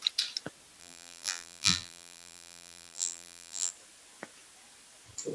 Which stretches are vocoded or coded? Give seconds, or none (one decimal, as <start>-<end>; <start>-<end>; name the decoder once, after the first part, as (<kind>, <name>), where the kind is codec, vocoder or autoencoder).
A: 0.8-3.7 (vocoder, BigVGAN v2)